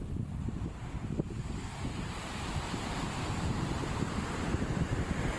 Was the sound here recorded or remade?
remade